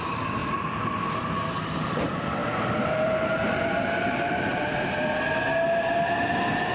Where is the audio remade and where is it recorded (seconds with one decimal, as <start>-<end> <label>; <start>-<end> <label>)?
0.0-0.4 recorded; 0.4-1.0 remade; 1.0-2.4 recorded; 2.4-5.2 remade; 5.2-6.7 recorded